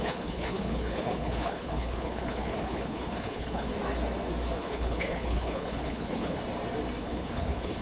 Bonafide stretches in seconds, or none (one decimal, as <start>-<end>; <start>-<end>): 3.7-4.6; 6.4-7.0